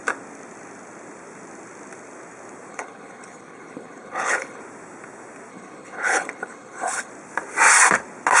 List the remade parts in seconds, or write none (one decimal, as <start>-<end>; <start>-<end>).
2.7-4.6; 5.5-7.1